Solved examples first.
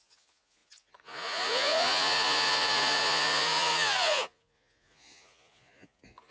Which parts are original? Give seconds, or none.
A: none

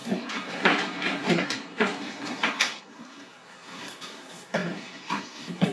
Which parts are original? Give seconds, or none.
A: none

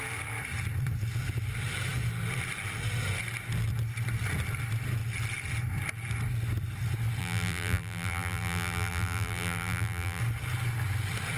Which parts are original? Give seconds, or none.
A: 0.0-7.2; 10.2-11.4

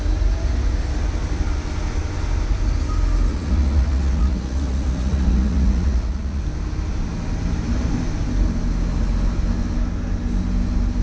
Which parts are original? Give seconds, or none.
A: 0.0-3.3; 6.4-11.0

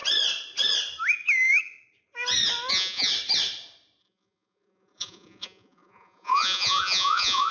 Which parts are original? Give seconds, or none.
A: 0.0-2.7; 3.1-4.0